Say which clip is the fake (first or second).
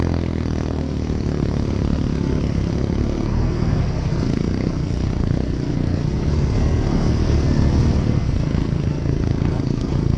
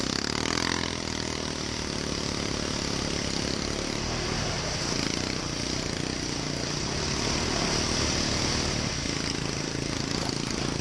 first